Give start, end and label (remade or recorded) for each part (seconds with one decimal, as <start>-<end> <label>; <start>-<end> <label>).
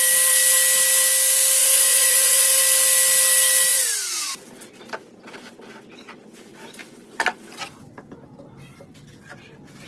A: 0.0-1.6 recorded; 1.6-2.6 remade; 2.6-3.7 recorded; 3.7-4.5 remade; 4.5-6.8 recorded; 6.8-7.4 remade; 7.4-9.9 recorded